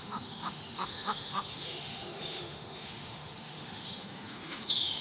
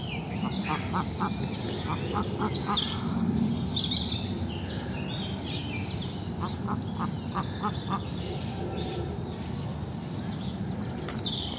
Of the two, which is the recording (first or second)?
second